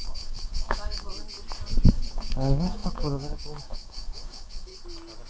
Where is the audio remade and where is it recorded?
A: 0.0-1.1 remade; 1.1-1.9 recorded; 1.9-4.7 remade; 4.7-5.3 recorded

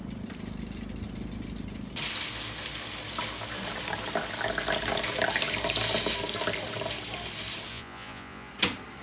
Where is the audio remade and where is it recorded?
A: 0.0-7.7 recorded; 7.7-8.5 remade; 8.5-9.0 recorded